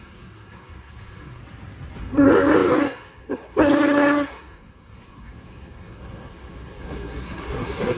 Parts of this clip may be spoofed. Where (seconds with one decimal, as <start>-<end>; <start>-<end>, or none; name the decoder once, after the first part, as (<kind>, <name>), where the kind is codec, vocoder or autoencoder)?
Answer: 0.0-1.4 (codec, SNAC); 2.0-8.0